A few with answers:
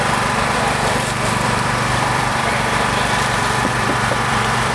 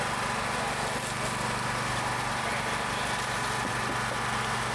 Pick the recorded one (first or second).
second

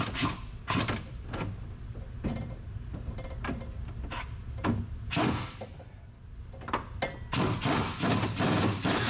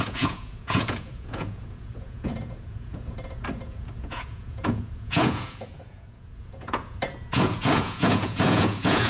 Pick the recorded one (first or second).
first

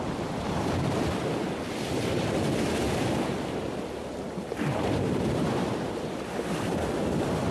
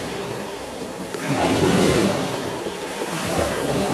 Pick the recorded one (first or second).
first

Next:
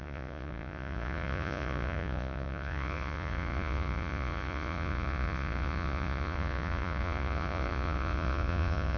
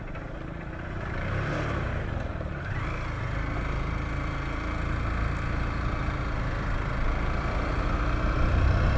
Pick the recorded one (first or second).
second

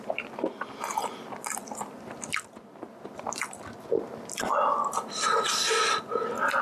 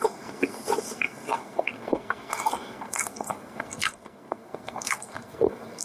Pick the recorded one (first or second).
first